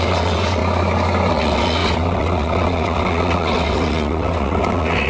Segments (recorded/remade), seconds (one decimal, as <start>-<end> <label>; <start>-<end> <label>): 0.0-0.6 remade; 0.6-1.3 recorded; 1.3-5.1 remade